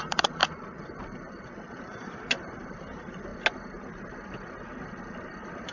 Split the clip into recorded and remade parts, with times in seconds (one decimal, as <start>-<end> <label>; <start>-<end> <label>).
0.0-0.4 remade; 0.4-1.4 recorded; 1.4-3.3 remade; 3.3-5.1 recorded; 5.1-5.7 remade